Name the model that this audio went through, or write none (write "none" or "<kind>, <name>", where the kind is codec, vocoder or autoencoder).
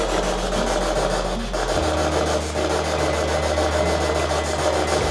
none